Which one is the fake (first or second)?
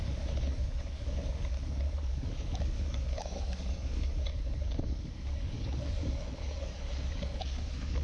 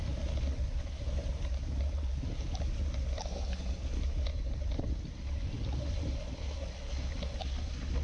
first